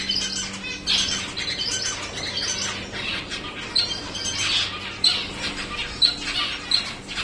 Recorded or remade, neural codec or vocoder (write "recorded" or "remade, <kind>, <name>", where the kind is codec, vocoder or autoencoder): recorded